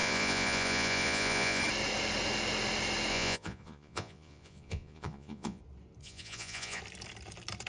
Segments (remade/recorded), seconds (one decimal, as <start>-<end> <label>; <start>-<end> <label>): 0.0-1.6 remade; 1.6-3.1 recorded; 3.1-5.6 remade; 5.6-6.0 recorded; 6.0-6.8 remade; 6.8-7.7 recorded